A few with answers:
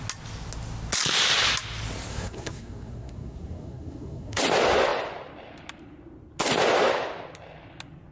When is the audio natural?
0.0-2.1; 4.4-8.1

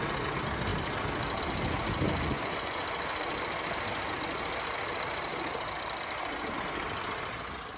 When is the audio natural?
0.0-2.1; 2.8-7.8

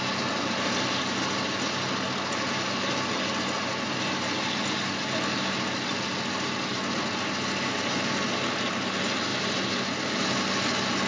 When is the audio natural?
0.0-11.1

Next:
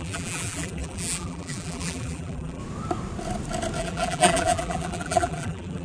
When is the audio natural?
2.6-3.8

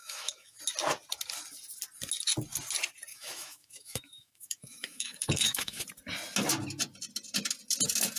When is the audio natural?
0.6-3.1; 5.8-8.2

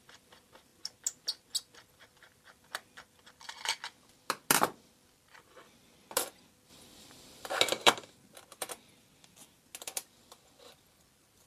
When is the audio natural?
0.0-6.7; 7.6-11.5

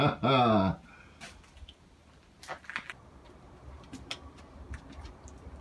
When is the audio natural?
0.0-5.6